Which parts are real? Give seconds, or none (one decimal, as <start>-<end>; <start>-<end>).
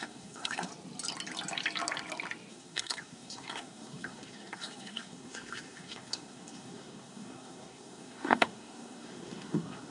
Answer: 0.7-2.5